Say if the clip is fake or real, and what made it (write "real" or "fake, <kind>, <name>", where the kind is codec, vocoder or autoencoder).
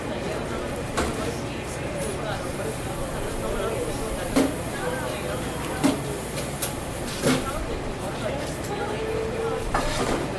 real